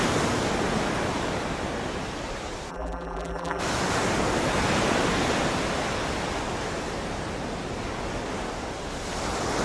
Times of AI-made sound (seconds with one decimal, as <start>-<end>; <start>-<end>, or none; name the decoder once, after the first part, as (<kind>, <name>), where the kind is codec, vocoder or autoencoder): 2.7-3.6 (vocoder, BigVGAN v2)